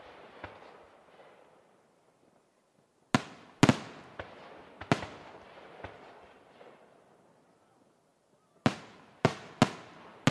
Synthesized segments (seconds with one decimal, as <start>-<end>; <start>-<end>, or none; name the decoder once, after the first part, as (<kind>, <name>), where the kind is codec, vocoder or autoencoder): none